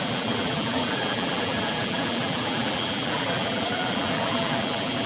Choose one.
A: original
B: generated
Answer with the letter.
B